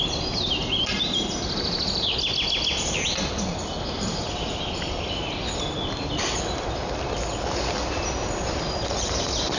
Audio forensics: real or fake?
real